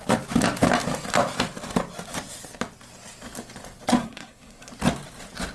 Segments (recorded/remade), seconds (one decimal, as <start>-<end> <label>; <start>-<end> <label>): 0.0-4.0 recorded; 4.0-4.7 remade; 4.7-5.5 recorded